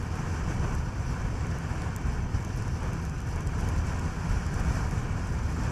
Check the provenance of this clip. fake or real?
real